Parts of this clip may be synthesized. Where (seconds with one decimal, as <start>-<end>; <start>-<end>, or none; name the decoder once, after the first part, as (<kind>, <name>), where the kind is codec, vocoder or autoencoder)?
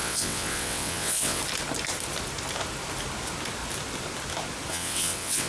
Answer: 0.0-1.4 (vocoder, WaveNeXt); 4.7-5.5